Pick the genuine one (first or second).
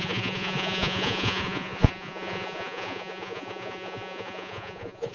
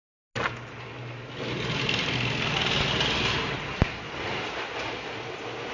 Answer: second